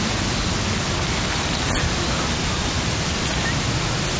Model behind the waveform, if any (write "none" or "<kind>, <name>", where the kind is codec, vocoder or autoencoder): none